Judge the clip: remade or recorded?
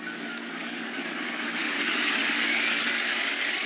remade